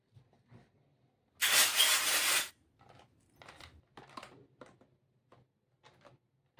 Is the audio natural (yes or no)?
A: yes